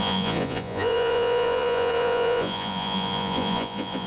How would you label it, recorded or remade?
remade